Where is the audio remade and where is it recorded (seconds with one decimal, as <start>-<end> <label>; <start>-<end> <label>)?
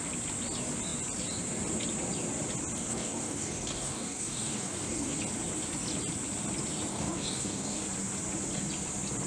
0.0-2.9 recorded; 2.9-5.2 remade; 5.2-6.9 recorded; 6.9-7.8 remade; 7.8-9.3 recorded